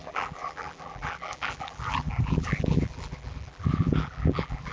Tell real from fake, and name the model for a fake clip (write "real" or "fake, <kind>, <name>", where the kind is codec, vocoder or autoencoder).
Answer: fake, vocoder, BigVGAN v2